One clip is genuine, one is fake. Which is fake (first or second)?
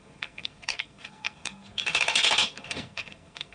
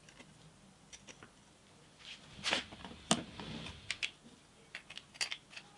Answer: first